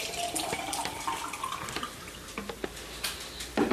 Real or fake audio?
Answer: real